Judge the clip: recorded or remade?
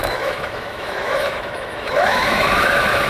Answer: remade